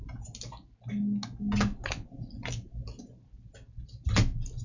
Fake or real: real